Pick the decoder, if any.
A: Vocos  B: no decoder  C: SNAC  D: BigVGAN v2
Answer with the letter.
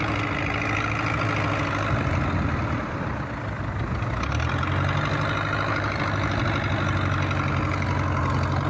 B